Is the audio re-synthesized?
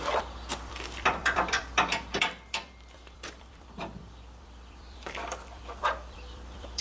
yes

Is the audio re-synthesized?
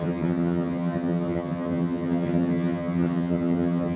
yes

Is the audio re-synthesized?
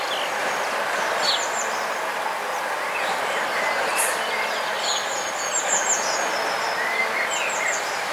no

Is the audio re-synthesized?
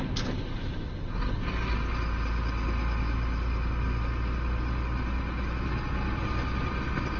no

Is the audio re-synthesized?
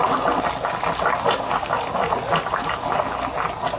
no